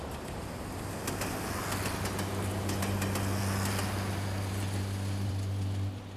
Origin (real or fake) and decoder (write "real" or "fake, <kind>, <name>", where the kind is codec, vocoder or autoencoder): real